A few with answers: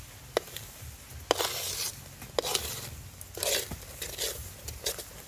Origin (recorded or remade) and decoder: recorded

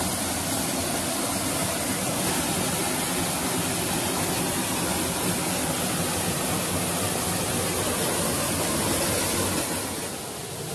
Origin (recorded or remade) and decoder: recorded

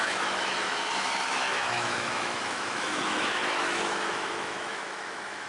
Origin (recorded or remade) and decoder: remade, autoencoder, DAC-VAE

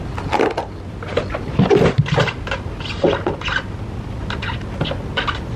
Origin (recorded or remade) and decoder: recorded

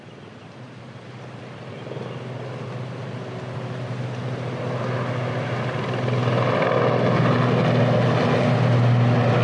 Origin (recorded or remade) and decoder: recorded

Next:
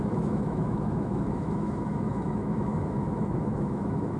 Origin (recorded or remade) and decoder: remade, autoencoder, DAC-VAE